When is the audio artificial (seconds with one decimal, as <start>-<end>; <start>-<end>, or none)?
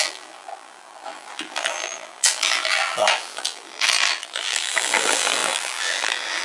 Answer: 0.0-6.4